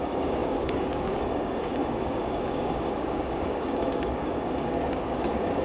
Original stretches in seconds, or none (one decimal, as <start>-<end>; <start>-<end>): none